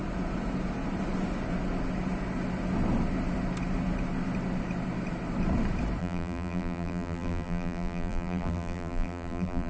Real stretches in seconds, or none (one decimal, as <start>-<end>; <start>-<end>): 0.0-6.0